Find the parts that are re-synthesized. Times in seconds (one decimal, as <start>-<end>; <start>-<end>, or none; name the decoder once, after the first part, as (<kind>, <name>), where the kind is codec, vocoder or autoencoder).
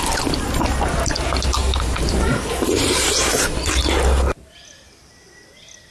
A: 1.6-5.1 (vocoder, BigVGAN v2)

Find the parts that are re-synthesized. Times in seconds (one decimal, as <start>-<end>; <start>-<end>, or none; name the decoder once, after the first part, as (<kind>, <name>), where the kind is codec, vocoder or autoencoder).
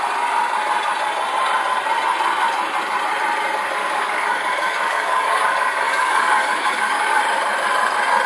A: 3.8-7.2 (codec, DAC)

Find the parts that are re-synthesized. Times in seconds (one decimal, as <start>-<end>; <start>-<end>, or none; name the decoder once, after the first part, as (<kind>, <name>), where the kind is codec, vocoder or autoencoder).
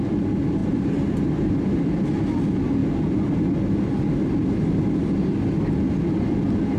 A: 0.6-1.5 (vocoder, BigVGAN v2)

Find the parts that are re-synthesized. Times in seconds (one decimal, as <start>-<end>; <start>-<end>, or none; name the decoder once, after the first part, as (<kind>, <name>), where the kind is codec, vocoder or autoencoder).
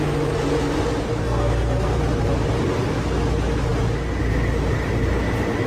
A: 1.2-2.0 (codec, SNAC)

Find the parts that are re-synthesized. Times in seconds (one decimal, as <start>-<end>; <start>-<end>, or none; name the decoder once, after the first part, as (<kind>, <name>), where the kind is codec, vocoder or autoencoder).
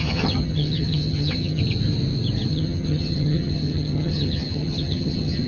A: 0.0-1.6 (vocoder, HiFi-GAN); 2.5-5.5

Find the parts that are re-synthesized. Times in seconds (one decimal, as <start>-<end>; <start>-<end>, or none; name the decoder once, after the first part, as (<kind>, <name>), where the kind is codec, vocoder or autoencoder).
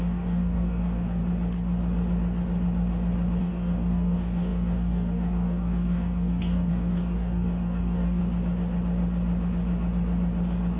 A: 0.0-1.2 (codec, DAC); 3.4-8.2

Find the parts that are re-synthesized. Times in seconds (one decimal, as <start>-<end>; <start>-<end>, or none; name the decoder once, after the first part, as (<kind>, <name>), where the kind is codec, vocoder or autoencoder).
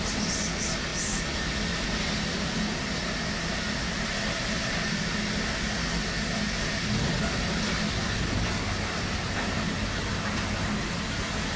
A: none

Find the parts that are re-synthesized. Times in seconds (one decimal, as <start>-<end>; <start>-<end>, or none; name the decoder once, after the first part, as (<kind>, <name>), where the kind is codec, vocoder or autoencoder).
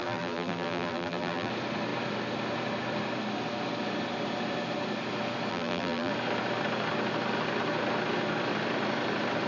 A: 0.0-1.5 (vocoder, BigVGAN v2); 5.5-6.1